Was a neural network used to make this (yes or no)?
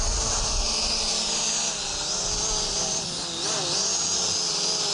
no